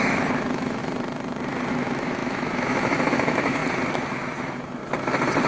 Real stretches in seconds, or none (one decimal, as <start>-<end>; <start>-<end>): 0.8-1.7; 3.6-4.1; 4.8-5.5